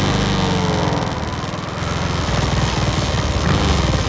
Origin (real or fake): real